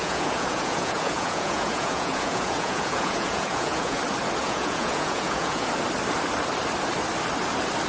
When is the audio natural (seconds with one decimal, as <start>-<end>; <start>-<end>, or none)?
4.0-4.4; 5.7-7.9